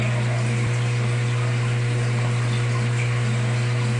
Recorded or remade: recorded